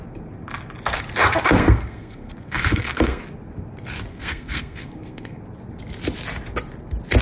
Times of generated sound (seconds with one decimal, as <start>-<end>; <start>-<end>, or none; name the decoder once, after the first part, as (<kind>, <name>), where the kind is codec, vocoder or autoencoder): 1.6-3.2 (codec, SNAC); 4.1-5.4